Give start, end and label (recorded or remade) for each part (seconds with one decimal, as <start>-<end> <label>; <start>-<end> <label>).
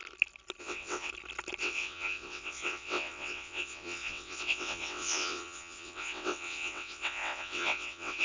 0.0-0.6 recorded; 0.6-1.1 remade; 1.1-1.6 recorded; 1.6-8.2 remade